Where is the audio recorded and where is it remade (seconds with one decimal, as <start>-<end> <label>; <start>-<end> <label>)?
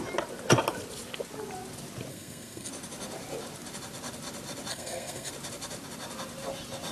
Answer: 0.0-2.1 recorded; 2.1-2.7 remade; 2.7-4.7 recorded; 4.7-5.3 remade; 5.3-6.9 recorded